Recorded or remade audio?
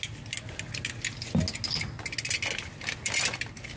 recorded